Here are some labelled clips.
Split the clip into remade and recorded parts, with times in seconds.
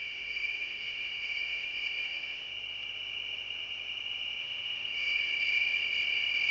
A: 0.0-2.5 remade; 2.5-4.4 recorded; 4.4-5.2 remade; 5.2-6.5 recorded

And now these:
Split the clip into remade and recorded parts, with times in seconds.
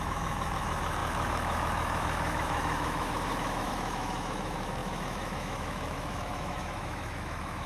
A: 0.0-7.7 remade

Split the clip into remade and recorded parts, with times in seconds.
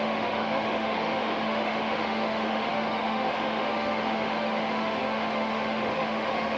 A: 0.0-6.6 remade